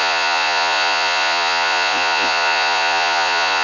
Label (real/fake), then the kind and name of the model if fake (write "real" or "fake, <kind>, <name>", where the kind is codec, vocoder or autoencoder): fake, vocoder, Vocos